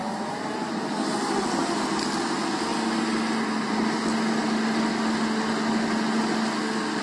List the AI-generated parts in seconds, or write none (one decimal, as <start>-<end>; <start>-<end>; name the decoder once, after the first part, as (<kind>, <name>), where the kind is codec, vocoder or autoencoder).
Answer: 0.0-0.7 (vocoder, BigVGAN v2)

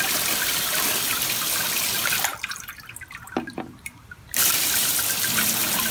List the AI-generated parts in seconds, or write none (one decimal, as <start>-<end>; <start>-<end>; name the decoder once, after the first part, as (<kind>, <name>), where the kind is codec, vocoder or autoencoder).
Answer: 2.3-5.9 (vocoder, BigVGAN v2)

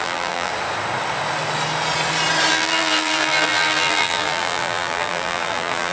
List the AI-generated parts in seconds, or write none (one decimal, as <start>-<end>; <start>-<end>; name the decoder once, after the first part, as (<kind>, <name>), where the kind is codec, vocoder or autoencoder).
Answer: 0.0-0.5 (vocoder, BigVGAN v2); 2.5-5.9

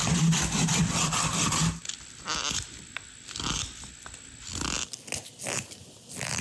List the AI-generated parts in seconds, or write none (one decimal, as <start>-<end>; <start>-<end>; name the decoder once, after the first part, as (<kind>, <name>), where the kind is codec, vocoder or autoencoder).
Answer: 0.0-1.6 (vocoder, BigVGAN v2); 5.3-6.4

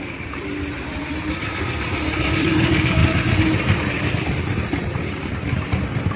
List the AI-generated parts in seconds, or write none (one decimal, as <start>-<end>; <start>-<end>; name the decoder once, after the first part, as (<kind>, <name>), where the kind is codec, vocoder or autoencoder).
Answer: 0.0-3.0 (vocoder, BigVGAN v2); 3.8-6.2

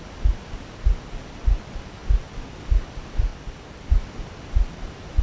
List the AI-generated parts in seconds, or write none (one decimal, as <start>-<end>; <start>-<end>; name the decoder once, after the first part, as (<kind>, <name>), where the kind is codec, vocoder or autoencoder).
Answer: none